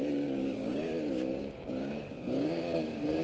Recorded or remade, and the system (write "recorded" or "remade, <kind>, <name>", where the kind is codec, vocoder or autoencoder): remade, codec, DAC